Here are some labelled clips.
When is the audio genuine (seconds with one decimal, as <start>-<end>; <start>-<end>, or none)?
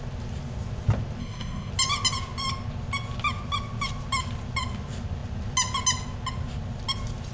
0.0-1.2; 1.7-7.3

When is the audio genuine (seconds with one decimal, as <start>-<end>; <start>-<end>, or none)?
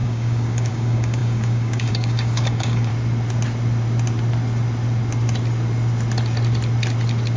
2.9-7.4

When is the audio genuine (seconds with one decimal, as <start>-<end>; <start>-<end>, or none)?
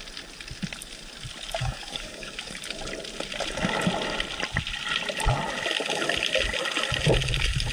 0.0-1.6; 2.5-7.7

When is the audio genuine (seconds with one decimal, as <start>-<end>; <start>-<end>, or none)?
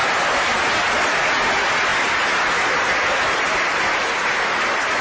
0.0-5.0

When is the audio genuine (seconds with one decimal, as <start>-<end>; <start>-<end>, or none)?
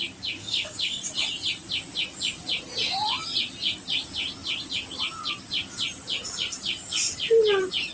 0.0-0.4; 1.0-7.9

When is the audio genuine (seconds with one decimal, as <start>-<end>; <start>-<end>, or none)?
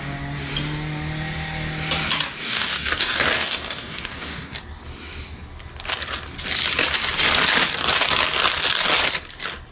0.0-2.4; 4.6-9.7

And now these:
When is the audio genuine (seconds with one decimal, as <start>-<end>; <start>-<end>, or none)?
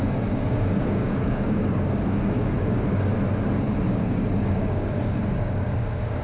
3.1-3.9